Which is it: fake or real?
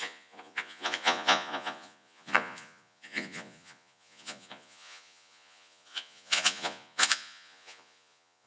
fake